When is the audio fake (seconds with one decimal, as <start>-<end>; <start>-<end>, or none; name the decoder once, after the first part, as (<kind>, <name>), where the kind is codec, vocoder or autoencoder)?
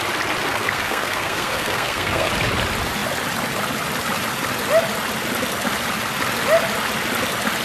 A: 0.4-2.3 (codec, SNAC)